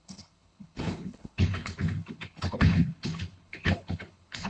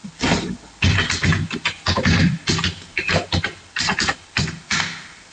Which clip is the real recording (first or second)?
second